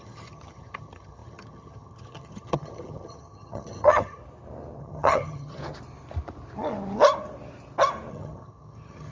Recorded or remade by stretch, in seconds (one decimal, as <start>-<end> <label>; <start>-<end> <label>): 0.0-4.2 remade; 4.2-4.8 recorded; 4.8-5.6 remade; 5.6-8.1 recorded; 8.1-9.1 remade